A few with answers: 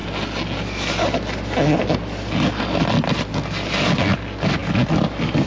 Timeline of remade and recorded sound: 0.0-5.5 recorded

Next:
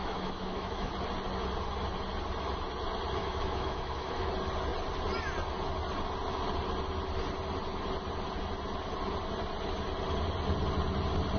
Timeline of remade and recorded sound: 0.0-0.9 remade; 0.9-3.2 recorded; 3.2-4.3 remade; 4.3-11.4 recorded

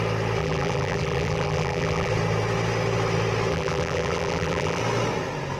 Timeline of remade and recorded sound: 0.0-0.4 recorded; 0.4-2.1 remade; 2.1-3.5 recorded; 3.5-4.8 remade; 4.8-5.6 recorded

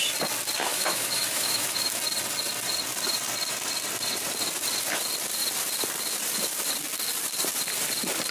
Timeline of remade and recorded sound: 0.0-0.7 recorded; 0.7-2.0 remade; 2.0-8.3 recorded